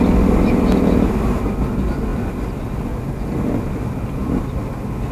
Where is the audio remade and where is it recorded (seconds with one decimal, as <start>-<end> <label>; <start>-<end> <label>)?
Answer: 0.0-5.1 recorded